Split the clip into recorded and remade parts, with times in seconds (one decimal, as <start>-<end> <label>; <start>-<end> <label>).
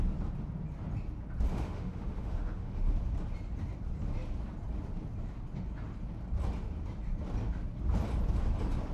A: 0.0-1.5 recorded; 1.5-2.9 remade; 2.9-8.9 recorded